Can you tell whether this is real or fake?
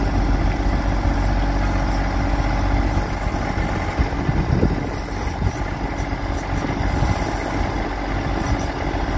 real